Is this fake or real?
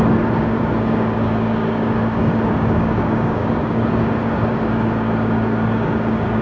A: fake